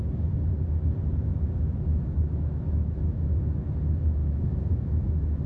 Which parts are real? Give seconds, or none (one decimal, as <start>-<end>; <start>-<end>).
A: 0.0-1.3; 3.7-4.2; 5.0-5.5